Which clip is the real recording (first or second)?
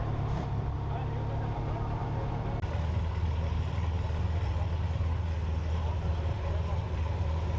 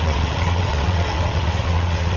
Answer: first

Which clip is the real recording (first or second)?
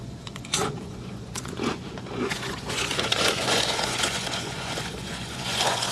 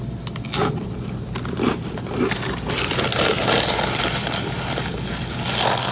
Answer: second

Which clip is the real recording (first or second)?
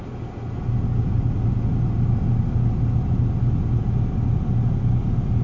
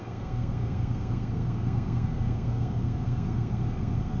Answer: first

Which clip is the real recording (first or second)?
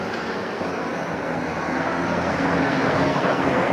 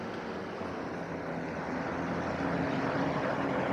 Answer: second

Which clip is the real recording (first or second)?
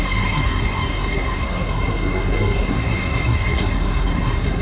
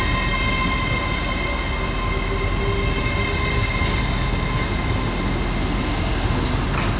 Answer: second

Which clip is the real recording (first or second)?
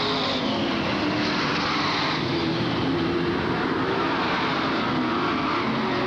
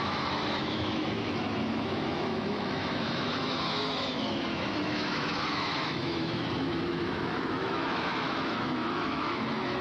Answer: first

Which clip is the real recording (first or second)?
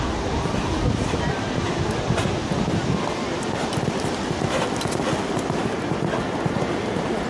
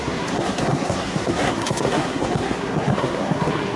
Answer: first